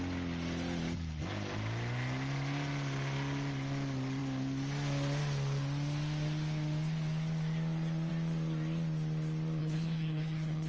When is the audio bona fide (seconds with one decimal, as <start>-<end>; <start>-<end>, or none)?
0.0-9.6